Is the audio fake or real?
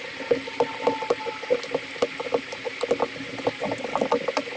real